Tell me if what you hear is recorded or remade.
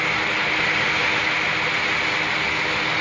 recorded